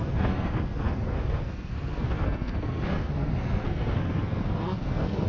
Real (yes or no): no